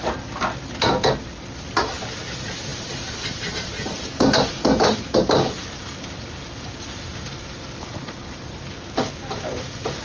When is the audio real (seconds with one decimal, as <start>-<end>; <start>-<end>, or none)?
0.0-10.0